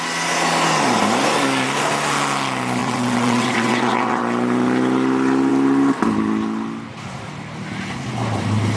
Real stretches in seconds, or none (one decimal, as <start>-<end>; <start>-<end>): 0.0-2.8; 4.2-8.8